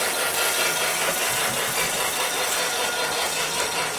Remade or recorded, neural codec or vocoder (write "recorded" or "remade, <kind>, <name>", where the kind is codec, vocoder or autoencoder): recorded